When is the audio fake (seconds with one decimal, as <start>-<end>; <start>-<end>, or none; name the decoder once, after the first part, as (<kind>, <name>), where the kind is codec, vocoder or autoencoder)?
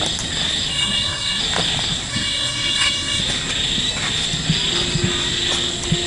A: 0.7-1.4 (codec, SNAC); 2.1-3.2